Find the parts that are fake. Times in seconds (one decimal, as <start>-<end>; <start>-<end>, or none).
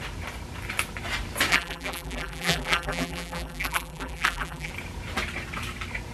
1.5-4.7